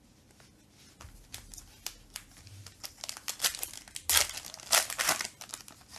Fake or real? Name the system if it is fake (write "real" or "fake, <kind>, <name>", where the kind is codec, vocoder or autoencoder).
real